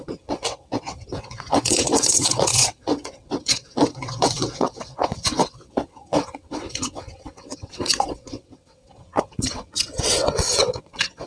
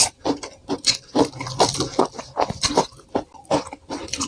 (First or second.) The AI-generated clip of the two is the first